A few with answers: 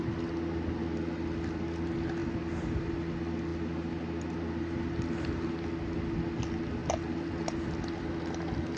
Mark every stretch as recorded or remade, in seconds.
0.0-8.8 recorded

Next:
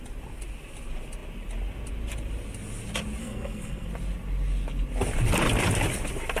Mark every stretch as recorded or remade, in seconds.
0.0-3.2 recorded; 3.2-3.9 remade; 3.9-6.4 recorded

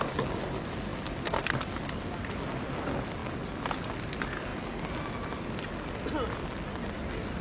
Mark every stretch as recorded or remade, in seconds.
0.0-7.4 recorded

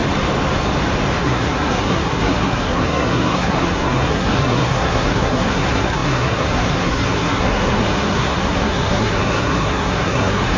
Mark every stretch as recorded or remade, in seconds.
0.0-1.2 recorded; 1.2-10.6 remade

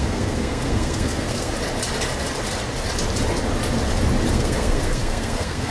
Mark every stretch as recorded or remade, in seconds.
0.0-1.5 remade; 1.5-4.3 recorded; 4.3-5.7 remade